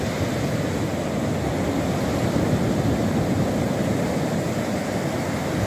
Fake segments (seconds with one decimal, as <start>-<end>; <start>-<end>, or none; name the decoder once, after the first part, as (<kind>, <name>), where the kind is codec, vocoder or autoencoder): 0.0-0.9 (vocoder, BigVGAN v2); 1.7-5.7